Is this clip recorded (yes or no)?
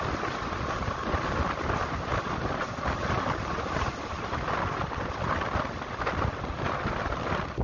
yes